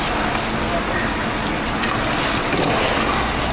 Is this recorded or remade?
recorded